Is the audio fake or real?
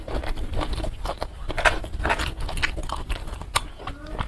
real